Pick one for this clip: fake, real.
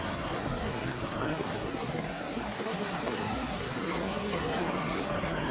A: fake